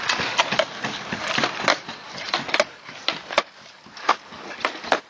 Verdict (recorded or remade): recorded